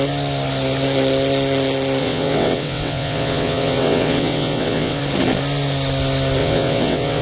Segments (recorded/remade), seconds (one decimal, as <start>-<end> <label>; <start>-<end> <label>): 0.0-2.0 recorded; 2.0-5.0 remade; 5.0-6.4 recorded; 6.4-7.2 remade